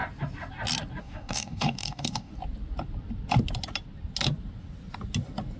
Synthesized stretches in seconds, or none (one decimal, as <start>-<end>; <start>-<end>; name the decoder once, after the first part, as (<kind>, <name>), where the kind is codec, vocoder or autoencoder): 1.0-2.3 (codec, DAC)